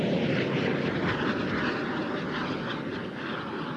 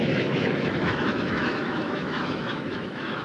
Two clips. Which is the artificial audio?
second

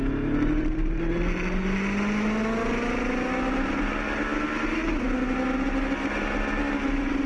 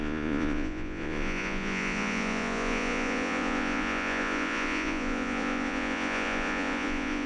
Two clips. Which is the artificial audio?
second